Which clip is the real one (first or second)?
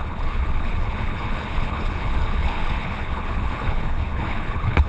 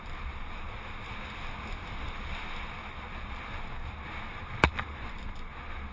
second